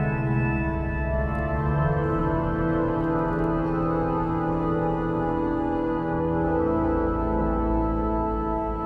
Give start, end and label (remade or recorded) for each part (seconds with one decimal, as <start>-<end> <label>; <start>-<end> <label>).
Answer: 0.0-8.9 recorded